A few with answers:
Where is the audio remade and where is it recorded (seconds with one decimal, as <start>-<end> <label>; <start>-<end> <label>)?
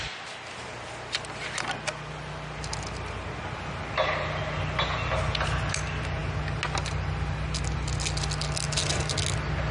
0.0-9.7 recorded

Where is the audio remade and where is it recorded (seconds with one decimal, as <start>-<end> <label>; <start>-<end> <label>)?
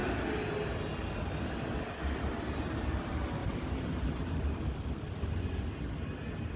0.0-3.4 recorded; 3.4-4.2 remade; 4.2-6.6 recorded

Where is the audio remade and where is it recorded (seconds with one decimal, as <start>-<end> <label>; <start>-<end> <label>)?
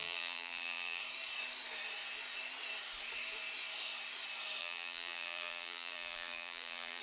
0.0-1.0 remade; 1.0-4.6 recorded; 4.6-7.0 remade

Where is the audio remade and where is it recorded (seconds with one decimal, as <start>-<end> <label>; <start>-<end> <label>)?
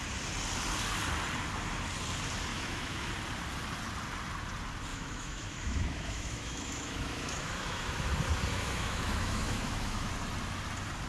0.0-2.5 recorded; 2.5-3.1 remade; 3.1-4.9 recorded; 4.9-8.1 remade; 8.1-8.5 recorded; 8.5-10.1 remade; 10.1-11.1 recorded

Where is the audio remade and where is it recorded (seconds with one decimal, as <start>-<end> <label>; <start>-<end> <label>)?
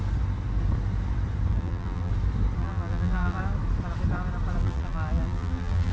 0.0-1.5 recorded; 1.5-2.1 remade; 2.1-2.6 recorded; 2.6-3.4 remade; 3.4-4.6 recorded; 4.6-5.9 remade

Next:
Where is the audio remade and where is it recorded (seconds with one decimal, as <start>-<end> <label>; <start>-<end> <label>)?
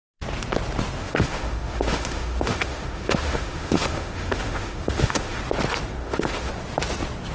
0.0-1.0 recorded; 1.0-5.4 remade; 5.4-6.0 recorded; 6.0-6.5 remade; 6.5-7.3 recorded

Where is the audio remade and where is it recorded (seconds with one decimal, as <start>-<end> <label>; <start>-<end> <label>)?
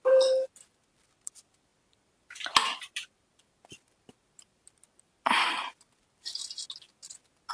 0.0-6.6 remade; 6.6-7.5 recorded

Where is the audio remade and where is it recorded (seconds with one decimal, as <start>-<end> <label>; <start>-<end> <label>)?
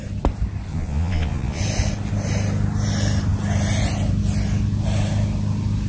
0.0-0.7 recorded; 0.7-1.6 remade; 1.6-5.9 recorded